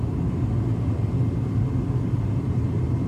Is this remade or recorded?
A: recorded